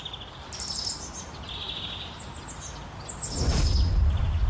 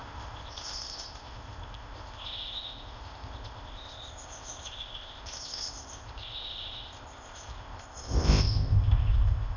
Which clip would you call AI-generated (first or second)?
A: second